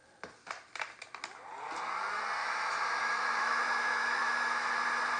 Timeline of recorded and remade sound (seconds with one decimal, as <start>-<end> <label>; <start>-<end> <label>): 0.0-2.4 recorded; 2.4-4.7 remade; 4.7-5.2 recorded